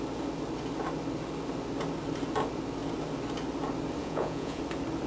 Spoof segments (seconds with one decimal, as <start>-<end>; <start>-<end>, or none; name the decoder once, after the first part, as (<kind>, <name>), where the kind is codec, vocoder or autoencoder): 4.0-4.6 (vocoder, Vocos)